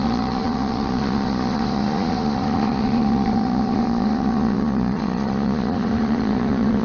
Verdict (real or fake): fake